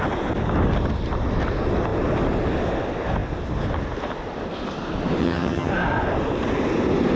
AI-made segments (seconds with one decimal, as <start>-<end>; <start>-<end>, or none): 5.2-5.7